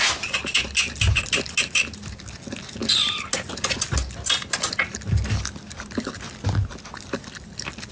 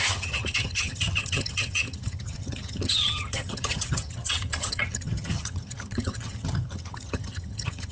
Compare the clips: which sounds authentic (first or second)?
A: first